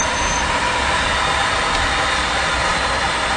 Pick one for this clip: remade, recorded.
recorded